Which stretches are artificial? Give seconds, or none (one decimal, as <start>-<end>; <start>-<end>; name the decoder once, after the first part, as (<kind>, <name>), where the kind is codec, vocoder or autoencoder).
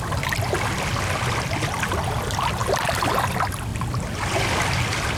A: none